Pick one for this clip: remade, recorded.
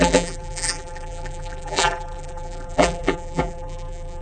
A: remade